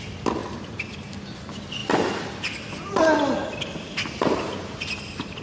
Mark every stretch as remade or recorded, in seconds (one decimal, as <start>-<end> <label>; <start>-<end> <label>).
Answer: 0.0-5.4 recorded